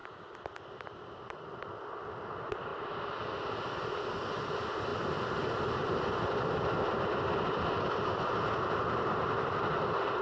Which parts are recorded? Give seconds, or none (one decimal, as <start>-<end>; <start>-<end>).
0.0-10.2